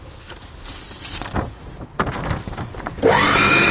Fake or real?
real